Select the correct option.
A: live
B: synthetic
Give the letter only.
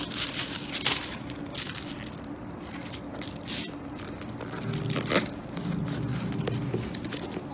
A